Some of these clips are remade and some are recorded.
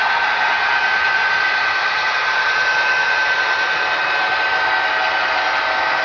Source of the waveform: recorded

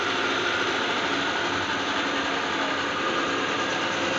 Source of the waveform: recorded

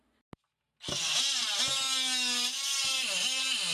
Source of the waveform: recorded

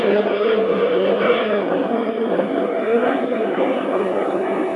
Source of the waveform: remade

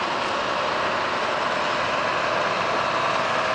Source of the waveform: recorded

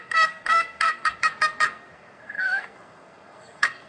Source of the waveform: remade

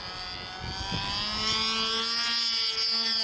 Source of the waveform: recorded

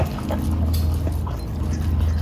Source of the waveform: recorded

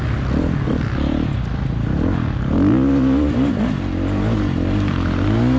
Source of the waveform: recorded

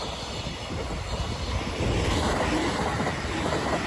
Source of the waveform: recorded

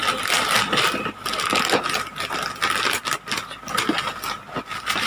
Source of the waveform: recorded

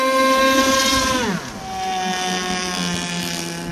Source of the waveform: recorded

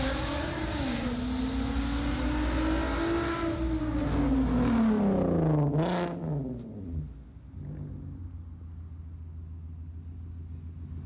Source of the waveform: recorded